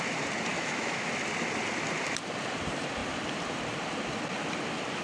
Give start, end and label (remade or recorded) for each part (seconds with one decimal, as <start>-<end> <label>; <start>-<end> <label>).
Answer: 0.0-0.5 recorded; 0.5-1.1 remade; 1.1-5.0 recorded

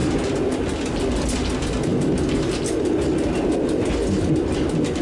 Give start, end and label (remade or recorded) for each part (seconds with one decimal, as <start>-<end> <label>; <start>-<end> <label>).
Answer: 0.0-5.0 recorded

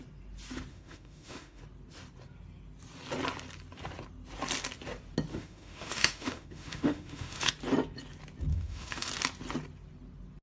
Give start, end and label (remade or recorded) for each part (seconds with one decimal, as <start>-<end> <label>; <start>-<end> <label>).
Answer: 0.0-0.7 recorded; 0.7-1.6 remade; 1.6-5.3 recorded; 5.3-7.5 remade; 7.5-8.5 recorded; 8.5-9.1 remade; 9.1-10.4 recorded

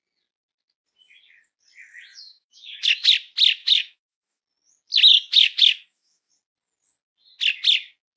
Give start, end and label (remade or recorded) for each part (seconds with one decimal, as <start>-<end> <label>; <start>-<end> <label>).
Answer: 0.0-2.1 recorded; 2.1-3.1 remade; 3.1-3.6 recorded; 3.6-4.4 remade; 4.4-5.1 recorded; 5.1-6.3 remade; 6.3-8.2 recorded

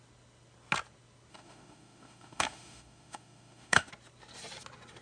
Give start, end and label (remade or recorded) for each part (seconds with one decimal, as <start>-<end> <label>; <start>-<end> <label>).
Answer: 0.0-1.3 recorded; 1.3-3.9 remade; 3.9-5.0 recorded